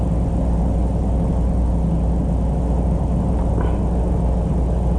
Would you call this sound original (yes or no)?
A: yes